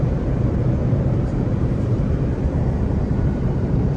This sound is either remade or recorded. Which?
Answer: remade